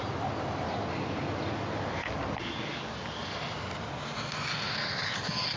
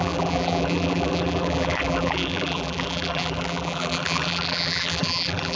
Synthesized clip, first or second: second